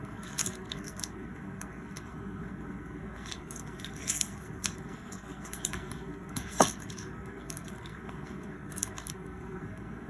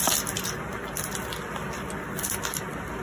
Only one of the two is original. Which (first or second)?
second